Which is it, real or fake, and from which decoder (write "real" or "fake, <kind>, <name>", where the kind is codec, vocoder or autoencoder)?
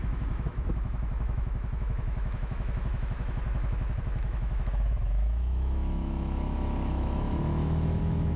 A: fake, autoencoder, DAC-VAE